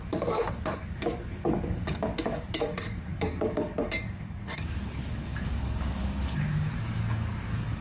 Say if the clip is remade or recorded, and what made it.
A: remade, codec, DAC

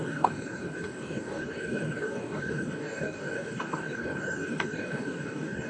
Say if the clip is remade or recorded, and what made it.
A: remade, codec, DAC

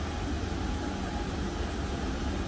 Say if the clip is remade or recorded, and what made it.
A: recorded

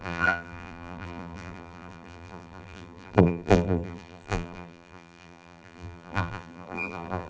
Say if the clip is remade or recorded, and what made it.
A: remade, vocoder, BigVGAN v2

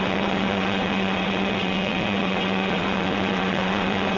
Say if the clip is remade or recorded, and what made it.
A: remade, vocoder, WaveNeXt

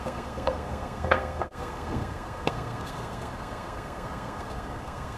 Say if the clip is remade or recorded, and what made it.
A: remade, codec, SNAC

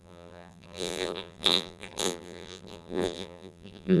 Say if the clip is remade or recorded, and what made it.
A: remade, vocoder, BigVGAN v2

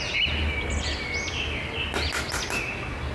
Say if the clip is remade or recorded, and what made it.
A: recorded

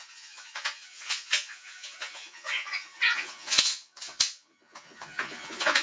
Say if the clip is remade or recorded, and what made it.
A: remade, vocoder, Vocos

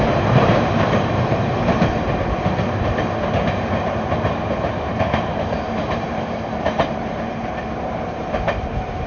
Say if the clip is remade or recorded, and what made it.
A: remade, vocoder, BigVGAN v2